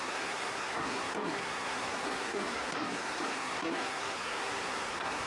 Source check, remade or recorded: remade